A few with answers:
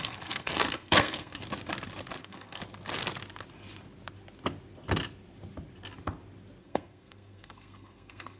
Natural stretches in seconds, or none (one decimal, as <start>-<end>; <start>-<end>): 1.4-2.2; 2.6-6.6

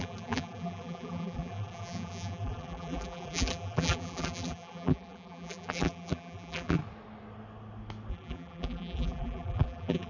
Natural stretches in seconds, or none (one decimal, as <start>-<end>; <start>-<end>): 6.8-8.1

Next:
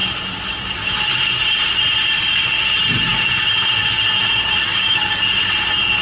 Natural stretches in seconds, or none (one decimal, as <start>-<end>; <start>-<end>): 0.0-4.7; 5.2-6.0

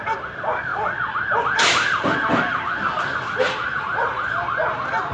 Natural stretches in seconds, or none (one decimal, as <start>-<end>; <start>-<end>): 0.0-0.7; 3.8-5.1